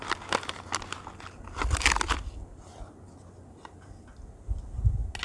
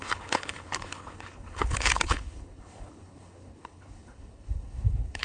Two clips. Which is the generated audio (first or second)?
second